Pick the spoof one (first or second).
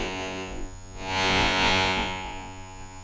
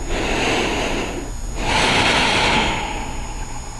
first